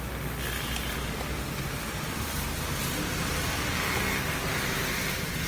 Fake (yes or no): no